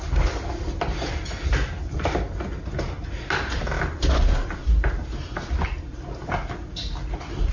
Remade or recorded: recorded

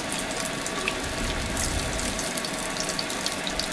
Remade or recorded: remade